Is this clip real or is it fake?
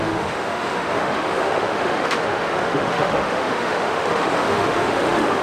fake